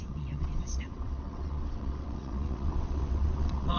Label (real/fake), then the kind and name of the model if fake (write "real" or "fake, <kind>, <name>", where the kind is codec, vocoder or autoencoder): fake, vocoder, WaveNeXt